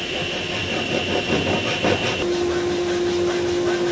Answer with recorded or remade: recorded